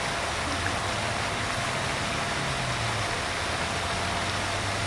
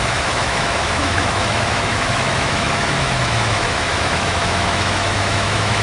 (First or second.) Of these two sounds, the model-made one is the second